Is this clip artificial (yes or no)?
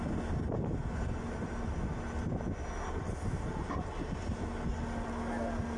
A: no